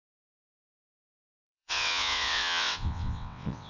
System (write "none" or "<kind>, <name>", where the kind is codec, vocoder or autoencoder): vocoder, WaveNeXt